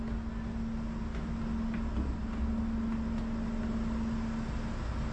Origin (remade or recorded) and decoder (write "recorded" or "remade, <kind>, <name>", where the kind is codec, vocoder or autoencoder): recorded